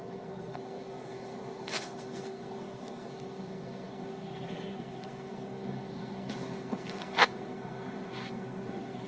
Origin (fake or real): fake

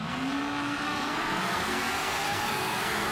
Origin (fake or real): fake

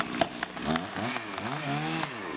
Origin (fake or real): real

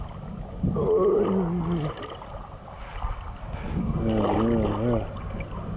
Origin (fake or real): real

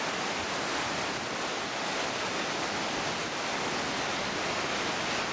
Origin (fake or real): real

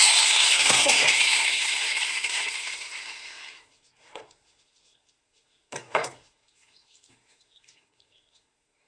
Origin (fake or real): fake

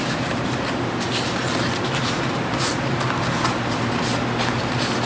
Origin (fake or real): real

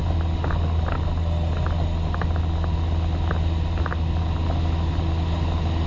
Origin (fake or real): real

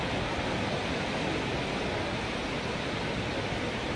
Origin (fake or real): real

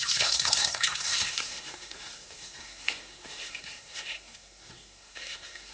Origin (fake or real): fake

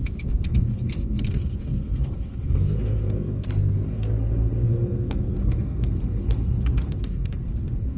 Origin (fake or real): fake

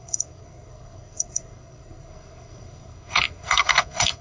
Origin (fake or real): fake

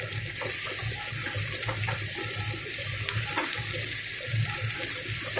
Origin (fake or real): real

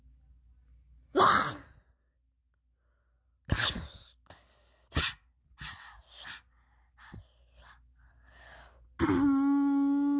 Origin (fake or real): real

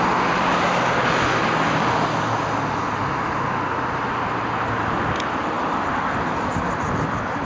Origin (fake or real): real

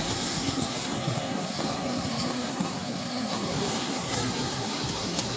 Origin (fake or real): fake